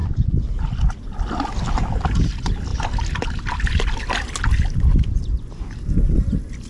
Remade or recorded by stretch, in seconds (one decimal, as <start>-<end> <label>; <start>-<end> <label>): 0.0-6.7 recorded